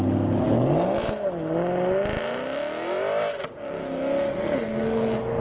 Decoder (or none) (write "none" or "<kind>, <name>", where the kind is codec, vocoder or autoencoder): none